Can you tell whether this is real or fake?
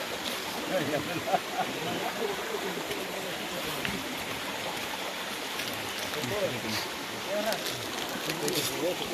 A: real